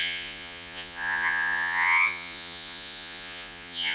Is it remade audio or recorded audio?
remade